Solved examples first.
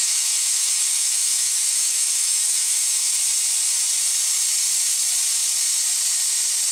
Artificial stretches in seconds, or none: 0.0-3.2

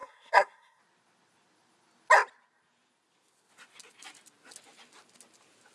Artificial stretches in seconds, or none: 0.0-0.8

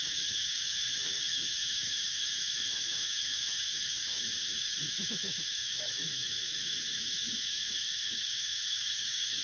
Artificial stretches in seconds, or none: 0.0-9.4

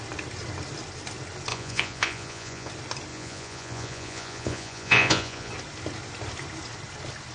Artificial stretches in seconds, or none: 1.5-2.7; 3.1-5.5